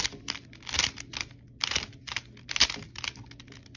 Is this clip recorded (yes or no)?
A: yes